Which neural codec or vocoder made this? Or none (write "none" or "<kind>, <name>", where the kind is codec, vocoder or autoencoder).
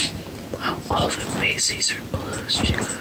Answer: none